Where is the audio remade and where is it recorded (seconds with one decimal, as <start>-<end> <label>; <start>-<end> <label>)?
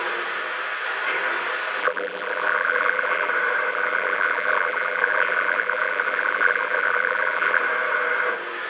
0.0-1.8 recorded; 1.8-3.3 remade; 3.3-3.7 recorded; 3.7-7.6 remade; 7.6-8.7 recorded